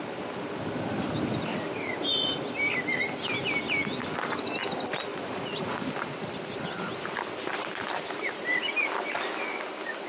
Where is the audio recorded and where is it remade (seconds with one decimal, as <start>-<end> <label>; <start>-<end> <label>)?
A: 0.0-1.5 recorded; 1.5-2.4 remade; 2.4-5.1 recorded; 5.1-5.8 remade; 5.8-10.1 recorded